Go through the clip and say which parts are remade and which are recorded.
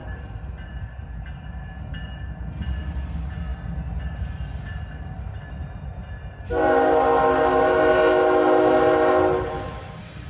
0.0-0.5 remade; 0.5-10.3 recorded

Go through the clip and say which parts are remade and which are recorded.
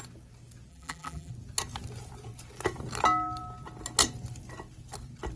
0.0-0.7 recorded; 0.7-1.3 remade; 1.3-5.4 recorded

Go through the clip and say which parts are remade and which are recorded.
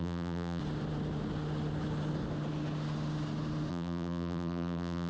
0.0-0.6 remade; 0.6-3.7 recorded; 3.7-5.1 remade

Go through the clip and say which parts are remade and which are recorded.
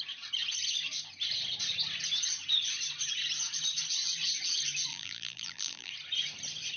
0.0-4.9 recorded; 4.9-5.9 remade; 5.9-6.8 recorded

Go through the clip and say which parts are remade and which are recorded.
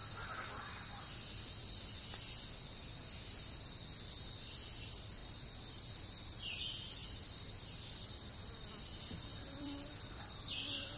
0.0-5.2 recorded; 5.2-6.6 remade; 6.6-7.0 recorded; 7.0-8.7 remade; 8.7-9.3 recorded; 9.3-10.2 remade; 10.2-11.0 recorded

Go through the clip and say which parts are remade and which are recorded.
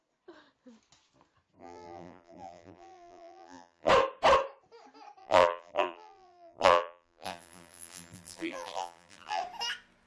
0.0-1.6 recorded; 1.6-3.9 remade; 3.9-5.2 recorded; 5.2-9.4 remade; 9.4-10.1 recorded